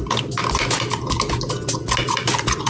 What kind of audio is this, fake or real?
real